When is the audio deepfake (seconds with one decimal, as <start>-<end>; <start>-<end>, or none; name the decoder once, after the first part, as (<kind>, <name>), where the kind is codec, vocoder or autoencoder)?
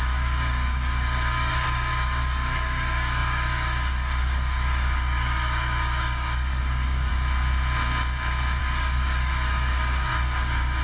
0.0-7.1 (codec, DAC); 8.6-10.8